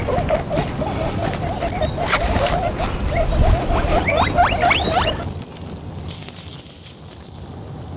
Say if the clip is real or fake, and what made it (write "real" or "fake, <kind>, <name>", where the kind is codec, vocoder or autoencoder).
real